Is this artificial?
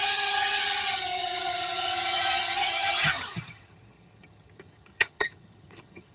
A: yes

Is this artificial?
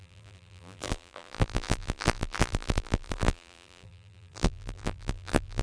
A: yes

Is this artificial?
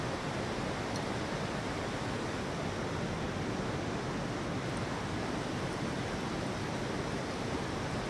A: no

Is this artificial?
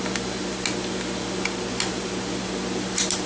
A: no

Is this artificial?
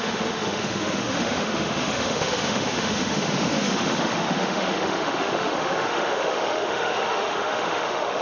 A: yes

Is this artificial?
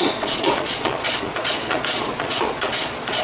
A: yes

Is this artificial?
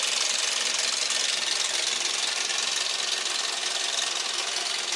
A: no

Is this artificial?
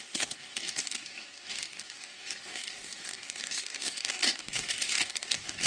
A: yes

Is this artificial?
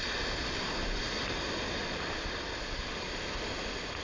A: no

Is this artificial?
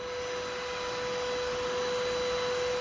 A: no